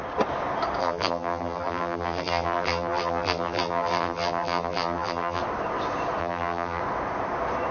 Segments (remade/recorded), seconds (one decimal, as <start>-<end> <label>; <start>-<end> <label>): 0.0-0.8 recorded; 0.8-5.4 remade; 5.4-6.2 recorded; 6.2-6.8 remade; 6.8-7.7 recorded